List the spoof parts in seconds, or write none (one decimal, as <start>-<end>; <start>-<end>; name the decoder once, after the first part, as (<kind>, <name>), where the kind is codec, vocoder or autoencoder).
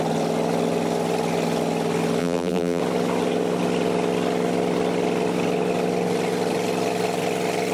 2.2-2.8 (vocoder, BigVGAN v2)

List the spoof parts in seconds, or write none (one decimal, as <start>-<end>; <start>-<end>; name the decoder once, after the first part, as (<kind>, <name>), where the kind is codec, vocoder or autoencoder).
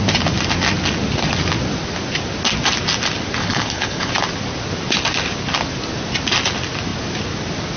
3.4-4.1 (codec, HILCodec)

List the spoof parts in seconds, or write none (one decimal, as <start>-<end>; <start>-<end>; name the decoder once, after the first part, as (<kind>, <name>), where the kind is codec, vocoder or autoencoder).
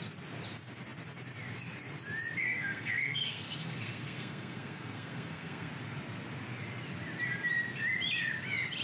2.4-5.7 (codec, SNAC)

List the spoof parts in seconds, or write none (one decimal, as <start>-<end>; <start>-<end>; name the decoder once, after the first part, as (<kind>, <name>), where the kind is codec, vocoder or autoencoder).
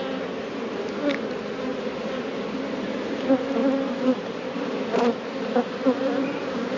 1.7-2.4 (vocoder, BigVGAN v2); 3.6-5.5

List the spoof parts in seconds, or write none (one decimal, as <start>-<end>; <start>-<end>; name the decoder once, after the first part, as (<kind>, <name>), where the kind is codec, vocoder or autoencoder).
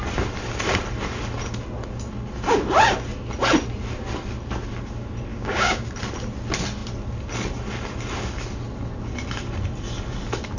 5.3-5.9 (codec, DAC)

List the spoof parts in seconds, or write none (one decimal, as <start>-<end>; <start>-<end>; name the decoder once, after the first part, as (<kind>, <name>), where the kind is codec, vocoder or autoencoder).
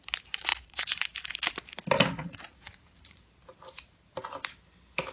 0.5-1.0 (vocoder, Vocos); 2.2-3.2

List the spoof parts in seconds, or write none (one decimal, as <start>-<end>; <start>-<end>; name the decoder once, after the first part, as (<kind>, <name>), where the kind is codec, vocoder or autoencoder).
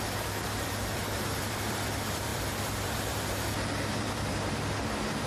0.0-5.3 (vocoder, BigVGAN v2)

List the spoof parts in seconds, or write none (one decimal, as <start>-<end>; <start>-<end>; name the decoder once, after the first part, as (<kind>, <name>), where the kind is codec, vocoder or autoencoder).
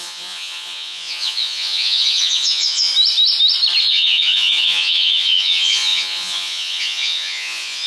0.0-2.9 (vocoder, Vocos); 3.8-7.9